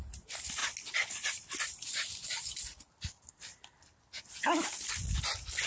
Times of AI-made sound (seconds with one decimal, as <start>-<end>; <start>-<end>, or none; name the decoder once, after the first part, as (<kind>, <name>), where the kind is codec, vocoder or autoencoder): none